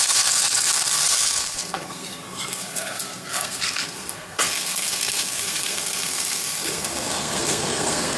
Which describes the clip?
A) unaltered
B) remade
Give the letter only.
B